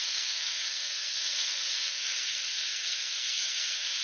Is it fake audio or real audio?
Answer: fake